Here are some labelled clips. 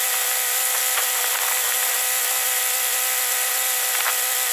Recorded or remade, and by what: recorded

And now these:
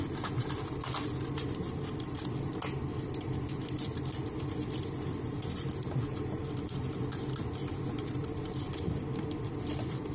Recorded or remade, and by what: remade, vocoder, BigVGAN v2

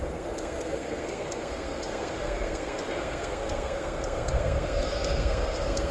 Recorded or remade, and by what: remade, codec, SNAC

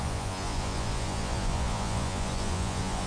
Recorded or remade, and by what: remade, vocoder, Vocos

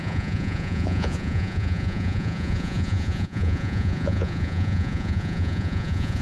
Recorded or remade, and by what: remade, vocoder, Vocos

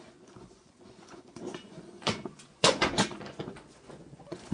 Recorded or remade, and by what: remade, vocoder, Vocos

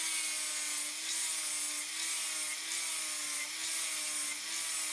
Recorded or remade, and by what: recorded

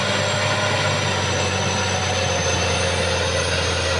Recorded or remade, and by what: recorded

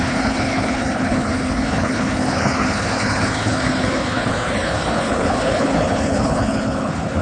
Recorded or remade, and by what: remade, codec, HILCodec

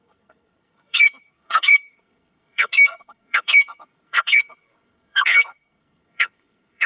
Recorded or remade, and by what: remade, codec, SNAC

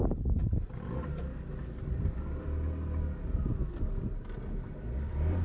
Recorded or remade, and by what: recorded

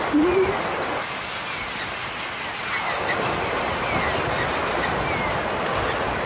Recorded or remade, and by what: recorded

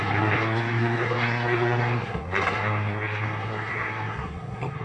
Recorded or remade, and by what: remade, codec, SNAC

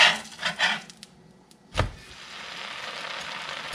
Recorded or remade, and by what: recorded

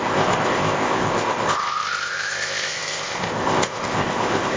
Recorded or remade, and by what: remade, codec, ZipCodec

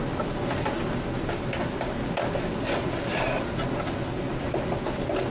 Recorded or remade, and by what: recorded